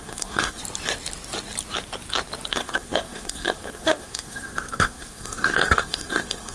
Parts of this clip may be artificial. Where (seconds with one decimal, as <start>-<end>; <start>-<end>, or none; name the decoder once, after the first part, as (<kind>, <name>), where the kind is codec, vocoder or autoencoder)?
0.0-0.6 (codec, SNAC); 2.5-6.5